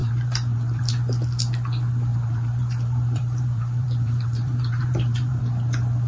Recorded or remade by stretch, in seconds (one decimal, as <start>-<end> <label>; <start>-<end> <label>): 0.0-0.9 remade; 0.9-2.1 recorded; 2.1-5.4 remade; 5.4-6.1 recorded